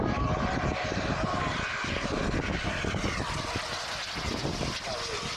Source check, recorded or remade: recorded